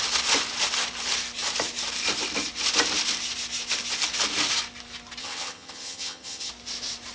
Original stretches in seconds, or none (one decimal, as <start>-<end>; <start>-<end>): 0.0-5.2; 6.5-7.1